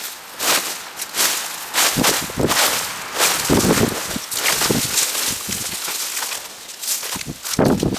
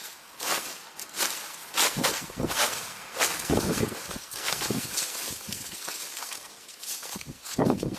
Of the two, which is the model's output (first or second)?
second